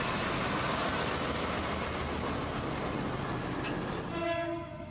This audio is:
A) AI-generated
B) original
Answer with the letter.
B